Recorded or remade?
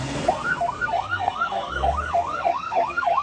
remade